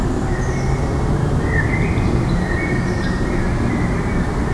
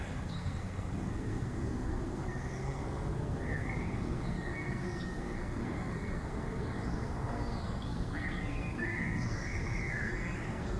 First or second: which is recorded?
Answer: first